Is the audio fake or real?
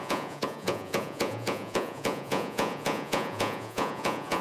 fake